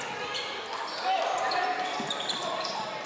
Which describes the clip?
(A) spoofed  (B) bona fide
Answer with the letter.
A